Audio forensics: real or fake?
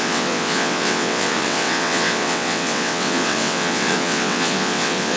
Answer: fake